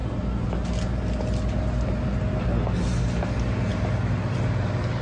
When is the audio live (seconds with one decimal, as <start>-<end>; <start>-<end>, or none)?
0.0-5.0